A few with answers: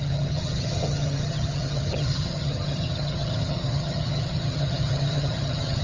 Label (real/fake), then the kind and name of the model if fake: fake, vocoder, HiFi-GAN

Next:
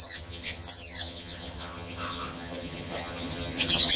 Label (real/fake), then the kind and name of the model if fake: fake, vocoder, HiFi-GAN